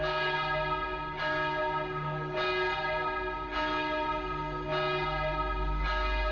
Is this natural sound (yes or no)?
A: yes